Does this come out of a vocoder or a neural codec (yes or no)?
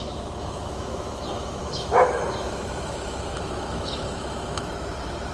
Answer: yes